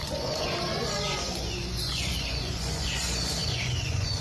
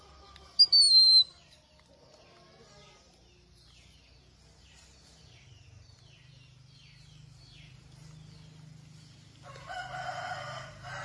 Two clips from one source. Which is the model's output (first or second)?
first